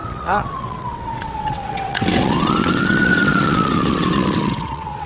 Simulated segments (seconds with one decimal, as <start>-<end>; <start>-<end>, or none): 0.0-5.1